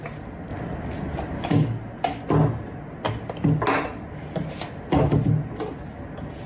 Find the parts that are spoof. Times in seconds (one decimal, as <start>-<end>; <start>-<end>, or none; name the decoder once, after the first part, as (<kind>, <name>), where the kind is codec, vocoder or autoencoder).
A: none

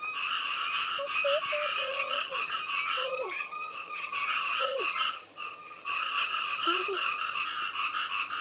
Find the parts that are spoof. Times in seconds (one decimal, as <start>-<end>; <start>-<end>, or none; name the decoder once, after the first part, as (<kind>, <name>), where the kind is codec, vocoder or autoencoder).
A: 1.7-2.6 (vocoder, HiFi-GAN); 3.0-7.4

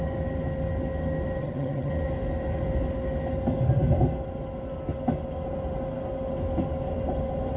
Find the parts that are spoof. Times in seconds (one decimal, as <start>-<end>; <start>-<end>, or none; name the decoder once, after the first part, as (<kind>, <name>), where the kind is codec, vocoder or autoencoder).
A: 1.4-1.9 (vocoder, HiFi-GAN)

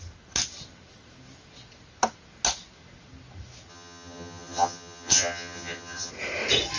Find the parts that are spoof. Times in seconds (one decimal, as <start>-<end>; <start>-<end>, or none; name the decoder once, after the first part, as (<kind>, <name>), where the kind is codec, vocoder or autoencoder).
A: 3.7-6.1 (vocoder, HiFi-GAN)

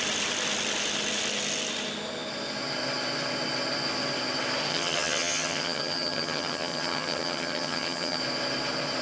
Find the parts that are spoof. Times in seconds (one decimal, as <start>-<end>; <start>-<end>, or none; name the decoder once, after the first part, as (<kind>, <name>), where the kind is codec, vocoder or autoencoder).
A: 4.7-8.2 (vocoder, HiFi-GAN)

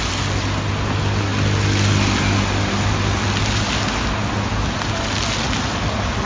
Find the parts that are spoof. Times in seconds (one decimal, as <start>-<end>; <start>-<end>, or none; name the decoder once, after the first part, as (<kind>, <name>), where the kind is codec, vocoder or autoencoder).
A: none

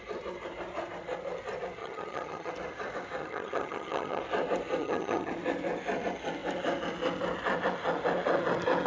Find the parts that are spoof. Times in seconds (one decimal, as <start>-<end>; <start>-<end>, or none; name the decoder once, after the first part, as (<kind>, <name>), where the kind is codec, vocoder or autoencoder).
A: 1.8-2.5 (vocoder, HiFi-GAN); 3.2-4.2; 4.8-5.3